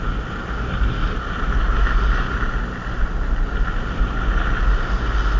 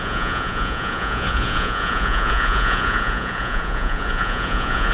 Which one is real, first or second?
first